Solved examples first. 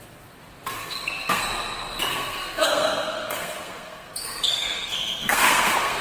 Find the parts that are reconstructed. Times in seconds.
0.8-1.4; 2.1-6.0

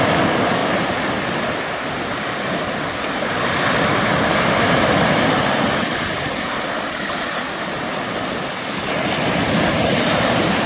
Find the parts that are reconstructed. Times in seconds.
none

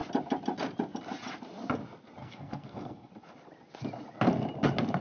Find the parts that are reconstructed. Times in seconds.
2.2-3.1